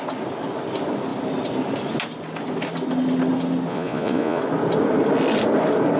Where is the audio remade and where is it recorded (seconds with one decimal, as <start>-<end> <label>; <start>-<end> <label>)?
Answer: 0.0-3.7 recorded; 3.7-4.4 remade; 4.4-6.0 recorded